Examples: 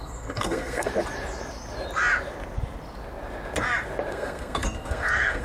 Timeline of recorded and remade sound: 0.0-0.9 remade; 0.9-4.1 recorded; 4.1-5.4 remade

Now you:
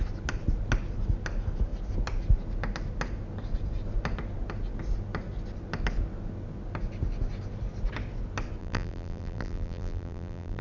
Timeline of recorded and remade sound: 0.0-8.6 recorded; 8.6-10.6 remade

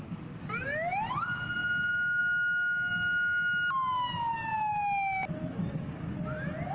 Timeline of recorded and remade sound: 0.0-6.7 recorded

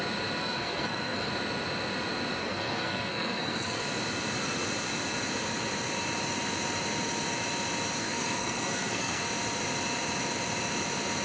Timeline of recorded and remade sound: 0.0-0.4 recorded; 0.4-1.3 remade; 1.3-2.4 recorded; 2.4-3.8 remade; 3.8-8.0 recorded; 8.0-9.2 remade; 9.2-11.2 recorded